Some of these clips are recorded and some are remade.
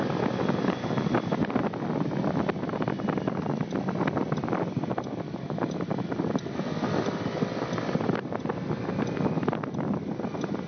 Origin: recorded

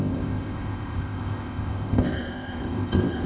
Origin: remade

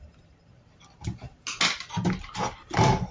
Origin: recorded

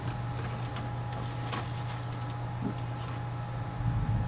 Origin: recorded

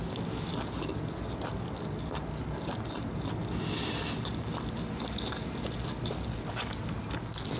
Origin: recorded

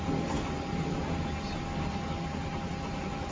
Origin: recorded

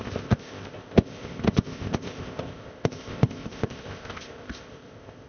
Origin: remade